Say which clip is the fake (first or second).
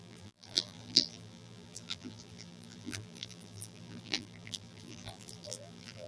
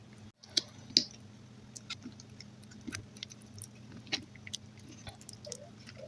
first